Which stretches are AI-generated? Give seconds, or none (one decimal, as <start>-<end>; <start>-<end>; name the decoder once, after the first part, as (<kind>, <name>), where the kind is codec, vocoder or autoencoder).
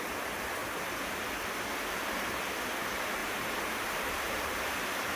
3.2-4.8 (vocoder, BigVGAN v2)